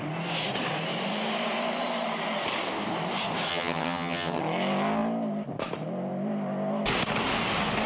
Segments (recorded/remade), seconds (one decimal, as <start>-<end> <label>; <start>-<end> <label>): 0.0-3.5 recorded; 3.5-4.4 remade; 4.4-7.9 recorded